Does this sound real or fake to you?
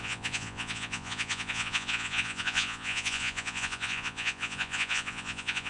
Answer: fake